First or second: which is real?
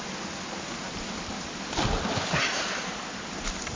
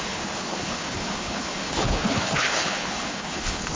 first